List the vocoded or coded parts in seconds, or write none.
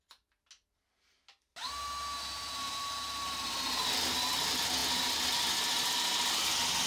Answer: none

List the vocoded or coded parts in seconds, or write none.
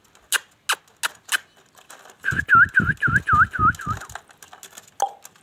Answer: none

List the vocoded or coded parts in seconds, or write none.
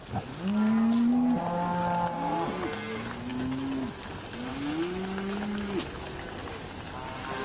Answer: 3.3-3.9 (autoencoder, DAC-VAE); 4.5-6.2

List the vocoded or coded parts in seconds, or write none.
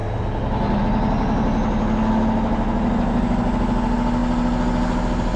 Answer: none